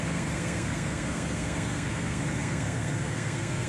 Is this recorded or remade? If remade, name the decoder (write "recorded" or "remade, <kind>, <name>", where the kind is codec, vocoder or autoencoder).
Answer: remade, codec, SNAC